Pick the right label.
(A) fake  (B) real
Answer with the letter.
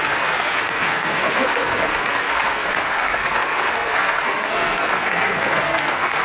A